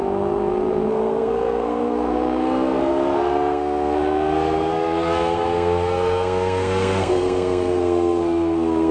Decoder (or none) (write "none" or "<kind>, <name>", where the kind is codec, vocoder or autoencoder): codec, SNAC